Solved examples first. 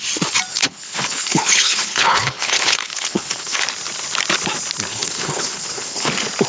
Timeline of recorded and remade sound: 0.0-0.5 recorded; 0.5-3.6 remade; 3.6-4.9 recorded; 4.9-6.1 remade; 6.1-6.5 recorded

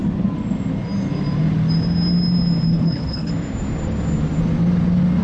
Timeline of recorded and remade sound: 0.0-2.7 recorded; 2.7-3.3 remade; 3.3-5.2 recorded